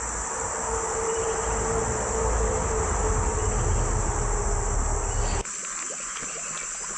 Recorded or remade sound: recorded